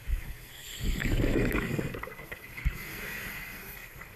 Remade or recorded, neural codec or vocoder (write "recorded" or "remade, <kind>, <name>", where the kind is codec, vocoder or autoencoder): remade, codec, SNAC